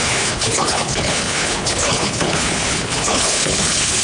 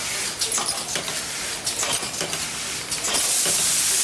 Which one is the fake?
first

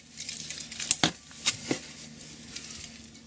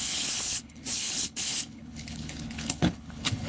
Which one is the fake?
second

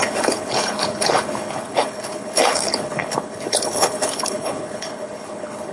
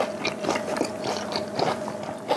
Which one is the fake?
first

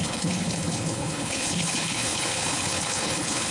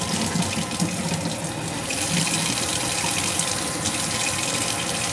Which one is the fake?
first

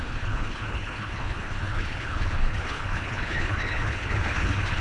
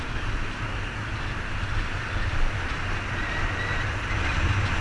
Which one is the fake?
first